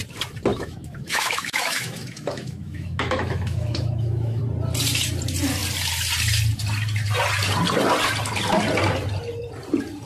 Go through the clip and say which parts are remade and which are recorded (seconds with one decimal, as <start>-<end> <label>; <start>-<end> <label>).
0.0-0.5 recorded; 0.5-4.4 remade; 4.4-10.1 recorded

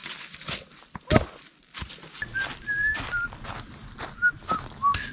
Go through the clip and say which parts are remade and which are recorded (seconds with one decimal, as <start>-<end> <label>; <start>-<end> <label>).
0.0-3.1 remade; 3.1-5.1 recorded